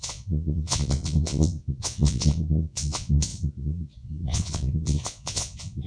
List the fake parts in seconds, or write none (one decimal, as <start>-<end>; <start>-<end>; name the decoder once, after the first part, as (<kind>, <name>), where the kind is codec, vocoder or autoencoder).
0.0-5.9 (vocoder, Vocos)